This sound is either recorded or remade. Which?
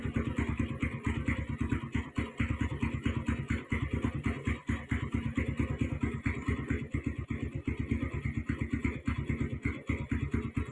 recorded